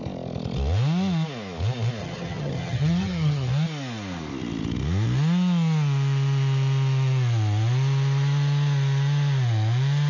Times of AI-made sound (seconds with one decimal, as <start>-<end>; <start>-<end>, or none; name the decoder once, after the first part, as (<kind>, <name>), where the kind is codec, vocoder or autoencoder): 2.0-3.5 (vocoder, HiFi-GAN)